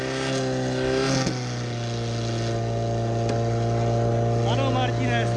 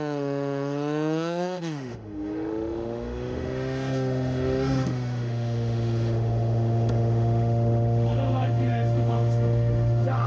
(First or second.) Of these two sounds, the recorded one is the first